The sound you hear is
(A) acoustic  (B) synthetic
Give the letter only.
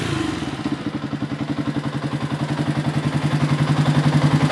A